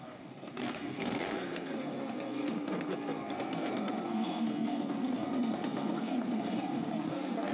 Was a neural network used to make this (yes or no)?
yes